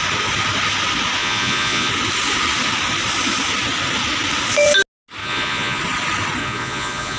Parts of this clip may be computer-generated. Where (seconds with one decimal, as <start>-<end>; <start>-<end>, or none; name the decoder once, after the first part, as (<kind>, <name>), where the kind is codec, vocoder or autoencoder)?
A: 1.2-1.9 (vocoder, Vocos); 5.2-5.8; 6.4-7.2